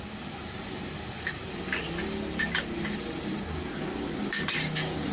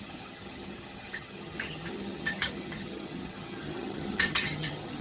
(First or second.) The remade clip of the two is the second